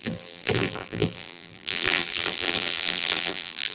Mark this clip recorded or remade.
remade